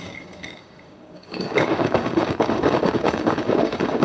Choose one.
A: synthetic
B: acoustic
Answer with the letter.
A